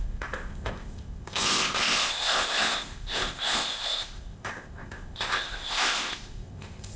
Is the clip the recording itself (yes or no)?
no